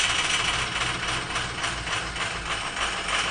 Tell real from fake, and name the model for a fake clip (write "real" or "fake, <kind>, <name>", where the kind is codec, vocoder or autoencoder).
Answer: real